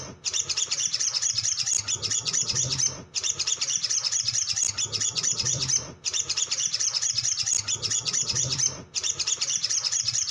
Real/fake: fake